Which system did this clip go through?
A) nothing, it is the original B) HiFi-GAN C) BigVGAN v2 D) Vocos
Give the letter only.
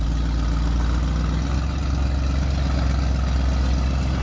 A